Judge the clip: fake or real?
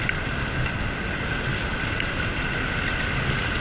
real